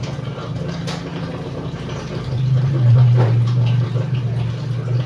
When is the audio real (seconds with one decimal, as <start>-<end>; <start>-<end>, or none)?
0.0-1.1; 4.2-5.1